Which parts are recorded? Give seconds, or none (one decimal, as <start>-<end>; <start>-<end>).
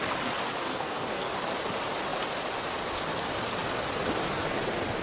0.0-0.7; 1.4-5.0